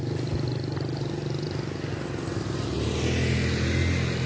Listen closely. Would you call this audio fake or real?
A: real